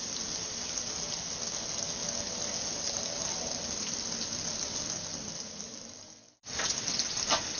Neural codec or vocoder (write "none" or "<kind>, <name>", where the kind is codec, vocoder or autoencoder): none